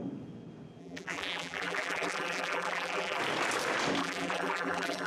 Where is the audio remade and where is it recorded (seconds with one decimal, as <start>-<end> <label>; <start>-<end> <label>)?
0.0-0.8 recorded; 0.8-3.2 remade; 3.2-4.0 recorded; 4.0-5.1 remade